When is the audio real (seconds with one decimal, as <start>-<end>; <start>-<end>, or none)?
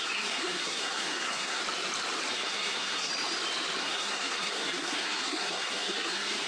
1.6-2.3; 3.1-3.8